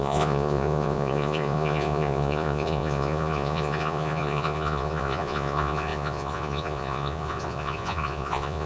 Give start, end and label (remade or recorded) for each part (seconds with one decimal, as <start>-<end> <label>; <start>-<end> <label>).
0.0-8.7 remade